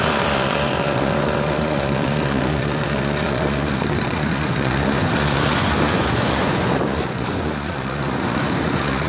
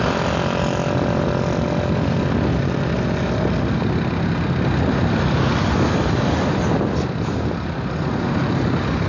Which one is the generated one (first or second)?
first